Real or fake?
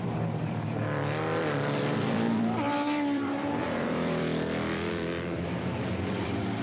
fake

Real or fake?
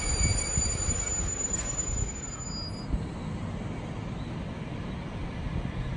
real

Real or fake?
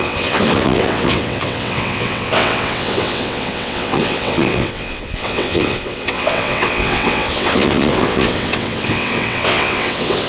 fake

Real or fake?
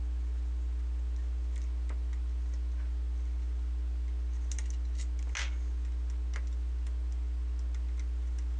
real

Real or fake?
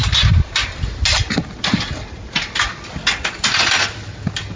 real